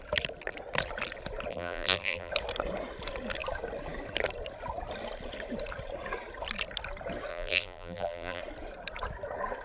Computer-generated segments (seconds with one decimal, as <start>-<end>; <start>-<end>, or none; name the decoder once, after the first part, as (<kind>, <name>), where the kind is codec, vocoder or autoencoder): 1.5-2.3 (vocoder, BigVGAN v2); 7.3-8.4